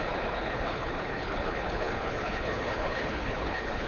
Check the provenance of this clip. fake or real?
fake